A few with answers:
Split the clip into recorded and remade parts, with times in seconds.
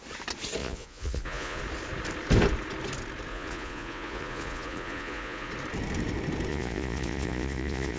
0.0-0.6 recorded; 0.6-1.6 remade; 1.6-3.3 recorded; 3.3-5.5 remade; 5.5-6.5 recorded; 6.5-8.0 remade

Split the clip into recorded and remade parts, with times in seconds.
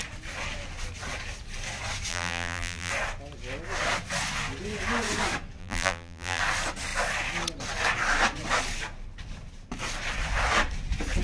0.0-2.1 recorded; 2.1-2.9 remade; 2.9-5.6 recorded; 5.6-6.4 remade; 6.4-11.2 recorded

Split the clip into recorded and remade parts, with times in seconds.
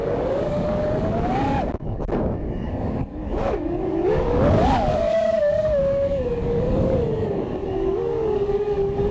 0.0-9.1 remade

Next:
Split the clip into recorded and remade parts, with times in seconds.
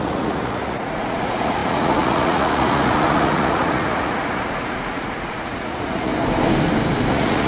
0.0-6.1 remade; 6.1-7.1 recorded; 7.1-7.5 remade